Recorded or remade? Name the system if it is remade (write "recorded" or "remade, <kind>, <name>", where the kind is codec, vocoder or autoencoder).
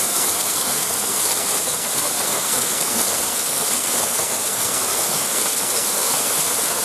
remade, codec, SNAC